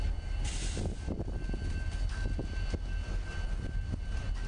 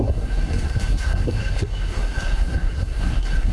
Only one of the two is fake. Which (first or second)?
second